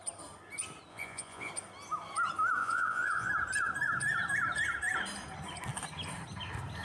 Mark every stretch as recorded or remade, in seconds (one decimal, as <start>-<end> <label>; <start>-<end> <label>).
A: 0.0-0.9 recorded; 0.9-1.5 remade; 1.5-2.6 recorded; 2.6-3.3 remade; 3.3-6.8 recorded